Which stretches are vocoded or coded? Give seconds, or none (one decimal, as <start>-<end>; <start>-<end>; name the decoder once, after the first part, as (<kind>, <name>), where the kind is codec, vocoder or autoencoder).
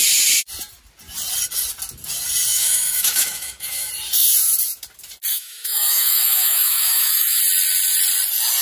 2.5-3.9 (autoencoder, DAC-VAE); 5.3-7.4